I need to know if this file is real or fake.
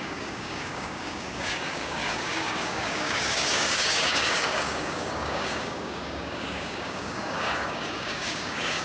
fake